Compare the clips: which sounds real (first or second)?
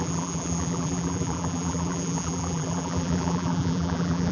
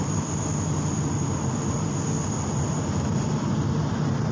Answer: second